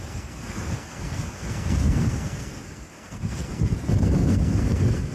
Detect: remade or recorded remade